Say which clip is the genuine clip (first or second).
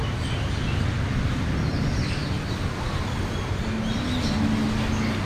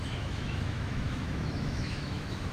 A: first